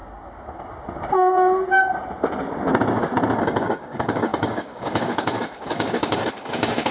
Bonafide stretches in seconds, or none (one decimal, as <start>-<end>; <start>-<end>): 0.0-3.4